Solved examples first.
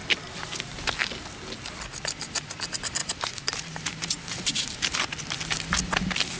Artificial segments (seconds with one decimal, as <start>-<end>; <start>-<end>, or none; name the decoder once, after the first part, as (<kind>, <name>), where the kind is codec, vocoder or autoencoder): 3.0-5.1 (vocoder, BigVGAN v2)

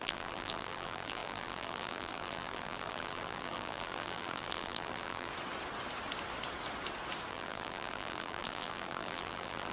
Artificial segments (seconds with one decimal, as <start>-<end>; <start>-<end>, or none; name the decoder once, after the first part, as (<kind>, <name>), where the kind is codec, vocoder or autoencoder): 0.0-5.3 (vocoder, BigVGAN v2); 7.3-9.7

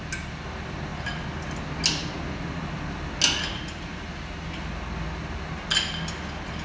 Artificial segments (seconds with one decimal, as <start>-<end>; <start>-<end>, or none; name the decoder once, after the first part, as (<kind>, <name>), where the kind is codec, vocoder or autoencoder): 3.9-4.7 (vocoder, BigVGAN v2)